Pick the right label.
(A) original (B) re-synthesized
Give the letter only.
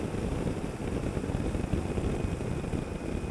A